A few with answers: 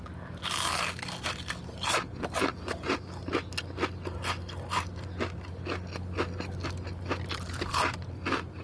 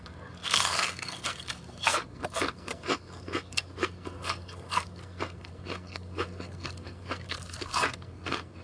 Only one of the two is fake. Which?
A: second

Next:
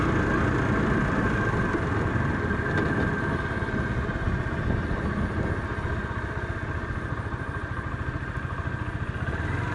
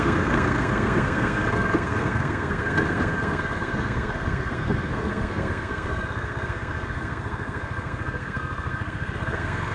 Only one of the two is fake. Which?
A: second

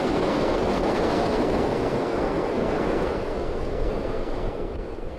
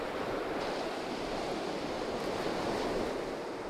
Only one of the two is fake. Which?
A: first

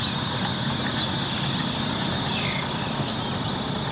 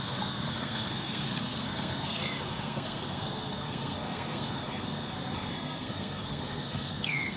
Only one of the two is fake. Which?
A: second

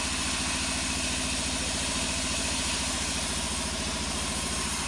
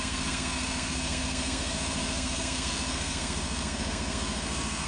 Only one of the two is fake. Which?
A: second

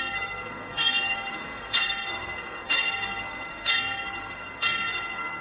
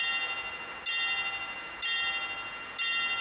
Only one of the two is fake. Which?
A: first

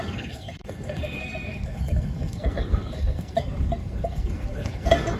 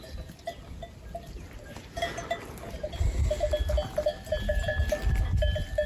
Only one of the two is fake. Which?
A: first